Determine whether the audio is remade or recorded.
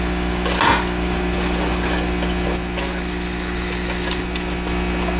recorded